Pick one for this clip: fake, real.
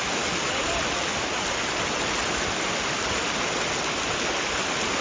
real